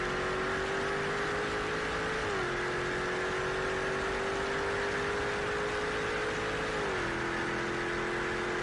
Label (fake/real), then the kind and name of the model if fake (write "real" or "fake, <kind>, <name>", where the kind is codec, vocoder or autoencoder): real